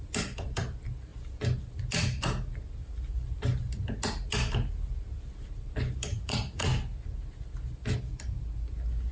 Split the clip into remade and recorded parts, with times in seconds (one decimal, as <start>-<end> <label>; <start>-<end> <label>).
0.0-6.1 recorded; 6.1-6.7 remade; 6.7-9.1 recorded